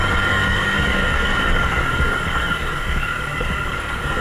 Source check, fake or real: fake